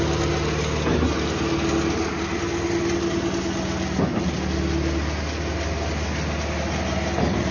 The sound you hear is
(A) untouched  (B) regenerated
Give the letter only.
A